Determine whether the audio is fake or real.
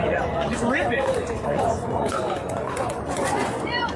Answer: fake